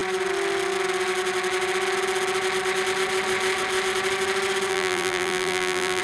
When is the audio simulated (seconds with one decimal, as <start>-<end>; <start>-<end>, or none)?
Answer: 4.7-6.0